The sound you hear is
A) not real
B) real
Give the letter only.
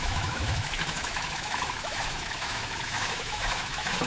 A